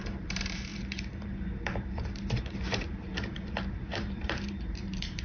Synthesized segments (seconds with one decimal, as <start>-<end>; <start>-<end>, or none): 0.0-5.2